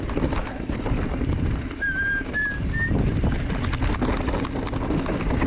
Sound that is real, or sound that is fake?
real